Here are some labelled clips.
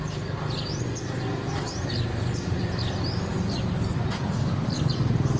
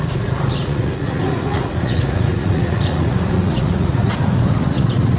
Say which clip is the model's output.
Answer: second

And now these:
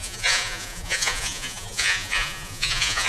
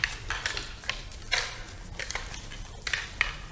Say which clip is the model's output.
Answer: first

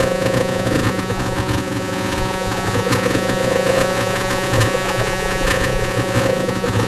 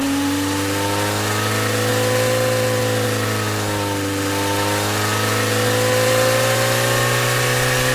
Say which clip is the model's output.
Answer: first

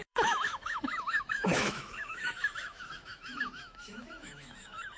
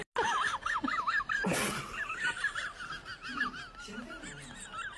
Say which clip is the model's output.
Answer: first